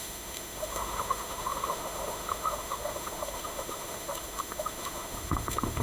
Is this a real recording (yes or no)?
no